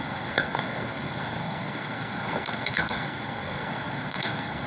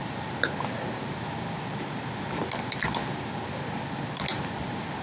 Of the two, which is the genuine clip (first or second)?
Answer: second